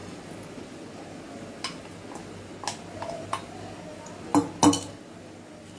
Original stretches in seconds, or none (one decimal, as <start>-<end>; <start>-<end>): 0.0-5.8